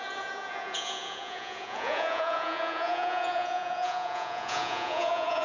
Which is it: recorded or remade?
remade